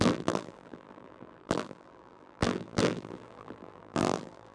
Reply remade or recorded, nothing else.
remade